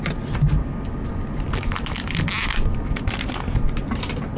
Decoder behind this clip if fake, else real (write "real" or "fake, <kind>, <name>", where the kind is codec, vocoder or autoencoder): real